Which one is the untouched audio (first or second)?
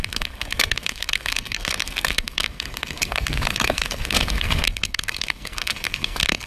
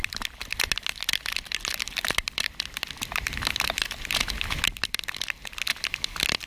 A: second